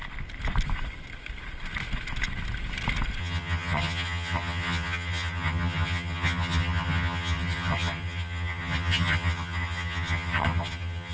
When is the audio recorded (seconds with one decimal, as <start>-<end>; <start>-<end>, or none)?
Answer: 0.0-3.2

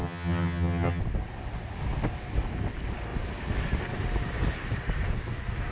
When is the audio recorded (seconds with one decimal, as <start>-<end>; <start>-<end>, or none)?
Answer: 1.0-5.7

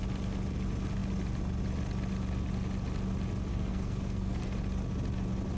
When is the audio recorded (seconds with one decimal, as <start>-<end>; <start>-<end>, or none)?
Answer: 0.0-3.5; 4.5-5.6

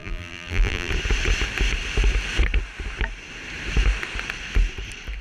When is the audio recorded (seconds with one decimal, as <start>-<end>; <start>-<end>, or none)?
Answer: 0.9-5.2

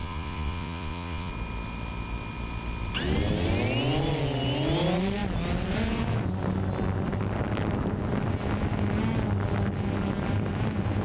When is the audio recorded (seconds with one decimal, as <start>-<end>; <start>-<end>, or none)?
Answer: 1.3-11.0

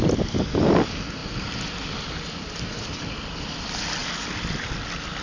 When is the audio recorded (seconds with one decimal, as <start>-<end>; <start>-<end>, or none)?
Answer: 0.0-5.2

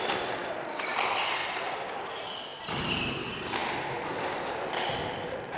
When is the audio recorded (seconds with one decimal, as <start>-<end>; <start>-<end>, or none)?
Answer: 0.0-5.6

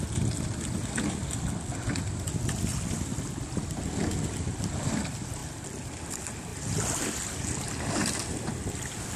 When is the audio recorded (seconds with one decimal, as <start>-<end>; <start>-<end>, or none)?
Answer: 0.0-9.2